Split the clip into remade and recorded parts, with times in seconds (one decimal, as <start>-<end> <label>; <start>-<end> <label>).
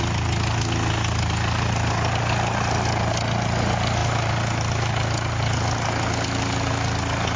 0.0-7.4 recorded